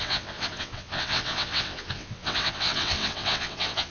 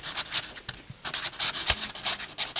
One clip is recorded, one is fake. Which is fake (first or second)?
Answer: first